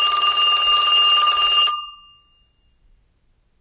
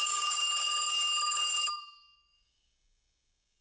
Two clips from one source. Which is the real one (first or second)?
first